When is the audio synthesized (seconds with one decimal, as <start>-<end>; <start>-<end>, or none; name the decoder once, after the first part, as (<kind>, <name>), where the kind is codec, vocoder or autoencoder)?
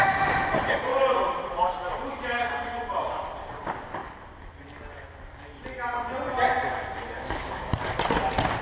none